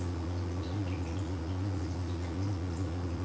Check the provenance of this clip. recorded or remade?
remade